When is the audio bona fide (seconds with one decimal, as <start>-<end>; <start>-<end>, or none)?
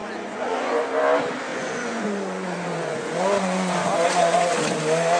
0.8-1.5; 4.6-5.2